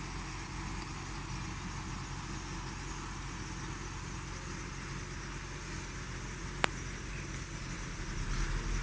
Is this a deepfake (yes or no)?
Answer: no